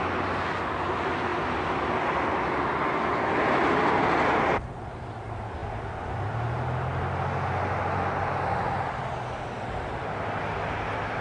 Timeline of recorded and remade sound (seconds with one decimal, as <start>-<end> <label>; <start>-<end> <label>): 0.0-11.2 recorded